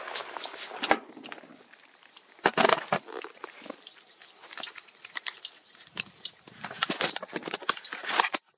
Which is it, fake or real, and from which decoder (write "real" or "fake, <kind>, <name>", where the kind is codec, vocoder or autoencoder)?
real